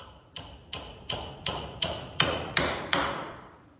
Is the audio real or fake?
fake